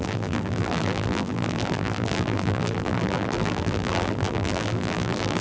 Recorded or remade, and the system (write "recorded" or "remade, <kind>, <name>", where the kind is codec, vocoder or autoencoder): remade, vocoder, BigVGAN v2